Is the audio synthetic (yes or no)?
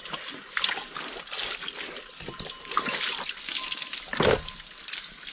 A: no